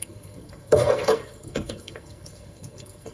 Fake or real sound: fake